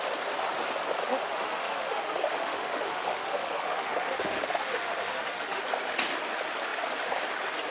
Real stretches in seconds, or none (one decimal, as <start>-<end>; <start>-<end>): 0.0-1.0; 5.6-7.7